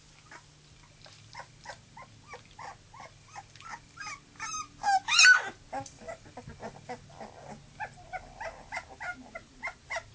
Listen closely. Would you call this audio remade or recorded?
recorded